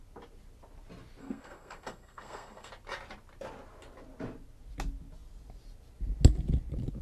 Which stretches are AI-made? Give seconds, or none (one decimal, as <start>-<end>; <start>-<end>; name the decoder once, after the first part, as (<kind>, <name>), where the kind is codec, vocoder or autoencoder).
1.2-2.7 (codec, SNAC)